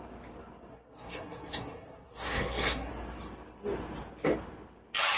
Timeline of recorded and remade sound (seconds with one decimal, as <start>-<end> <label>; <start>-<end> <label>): 0.0-0.7 recorded; 0.7-2.9 remade; 2.9-5.2 recorded